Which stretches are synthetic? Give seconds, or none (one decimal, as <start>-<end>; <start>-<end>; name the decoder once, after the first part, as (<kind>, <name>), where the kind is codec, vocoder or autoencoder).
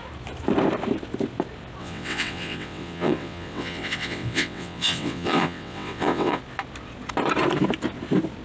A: 1.8-6.4 (vocoder, WaveNeXt)